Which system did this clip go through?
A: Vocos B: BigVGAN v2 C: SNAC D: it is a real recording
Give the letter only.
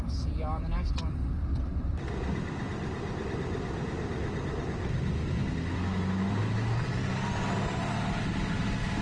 D